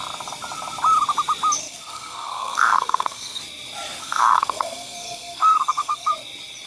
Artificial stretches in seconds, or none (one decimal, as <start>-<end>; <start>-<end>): 1.6-3.4; 4.0-6.1